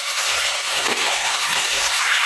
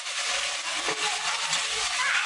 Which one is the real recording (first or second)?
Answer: second